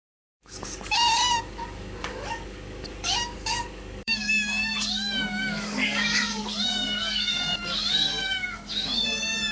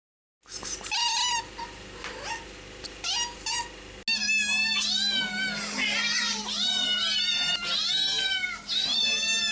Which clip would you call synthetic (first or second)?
first